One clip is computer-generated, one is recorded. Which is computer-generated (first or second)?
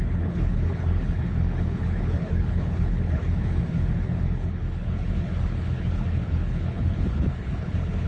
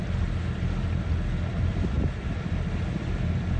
first